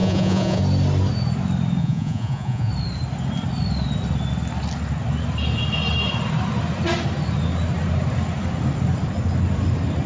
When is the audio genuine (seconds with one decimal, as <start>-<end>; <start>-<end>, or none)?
0.6-1.8; 2.7-10.1